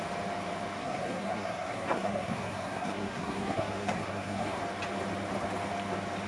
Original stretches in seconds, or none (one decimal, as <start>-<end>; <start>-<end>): 0.0-0.8; 4.6-6.3